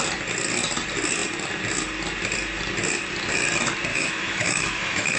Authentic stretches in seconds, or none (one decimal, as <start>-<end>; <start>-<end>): 0.0-3.9